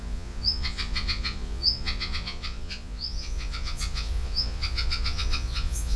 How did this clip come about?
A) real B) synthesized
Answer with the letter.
B